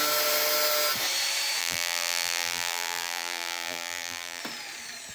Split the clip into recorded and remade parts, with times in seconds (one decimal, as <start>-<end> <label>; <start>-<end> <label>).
0.0-1.6 recorded; 1.6-4.4 remade; 4.4-5.1 recorded